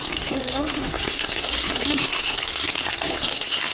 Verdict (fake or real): fake